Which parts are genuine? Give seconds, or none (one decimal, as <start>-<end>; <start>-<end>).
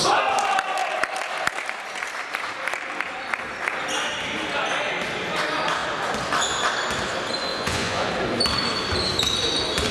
0.0-7.5; 8.1-9.9